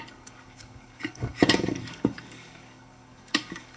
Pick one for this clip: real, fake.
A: fake